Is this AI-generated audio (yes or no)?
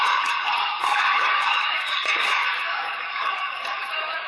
yes